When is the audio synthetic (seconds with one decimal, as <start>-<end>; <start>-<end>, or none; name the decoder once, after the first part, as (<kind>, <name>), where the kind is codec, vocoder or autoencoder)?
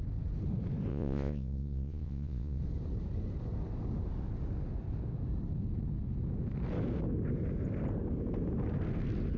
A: 0.9-2.6 (vocoder, Vocos)